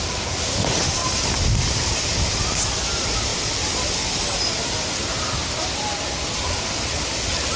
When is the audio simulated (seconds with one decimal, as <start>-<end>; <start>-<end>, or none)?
none